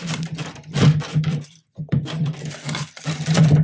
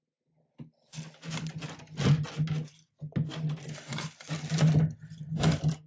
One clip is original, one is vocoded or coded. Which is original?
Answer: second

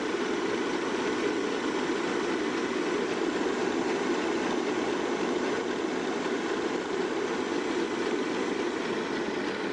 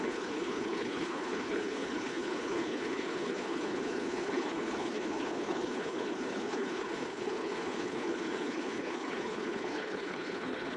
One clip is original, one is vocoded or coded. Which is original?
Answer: first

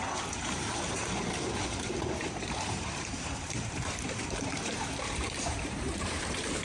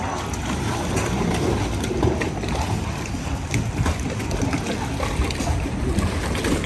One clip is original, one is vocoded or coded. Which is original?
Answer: second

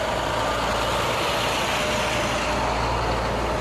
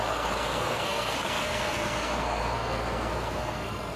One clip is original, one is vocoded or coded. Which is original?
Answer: first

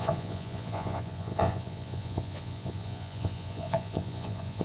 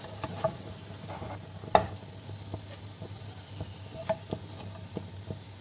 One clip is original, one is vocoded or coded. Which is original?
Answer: second